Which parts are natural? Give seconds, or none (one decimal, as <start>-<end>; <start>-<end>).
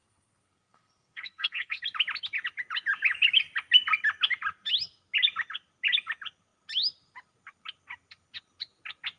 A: 1.8-9.2